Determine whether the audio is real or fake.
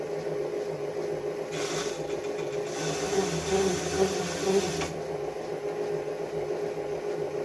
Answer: real